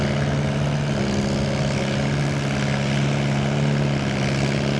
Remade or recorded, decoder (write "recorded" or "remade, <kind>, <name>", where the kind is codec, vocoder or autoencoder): recorded